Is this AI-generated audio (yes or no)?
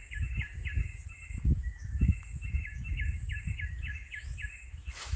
yes